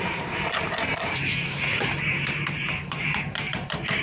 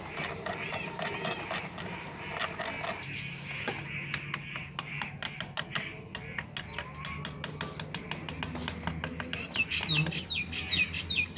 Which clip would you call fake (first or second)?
first